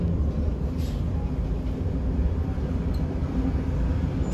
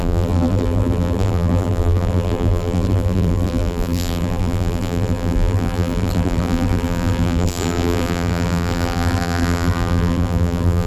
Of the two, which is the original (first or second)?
first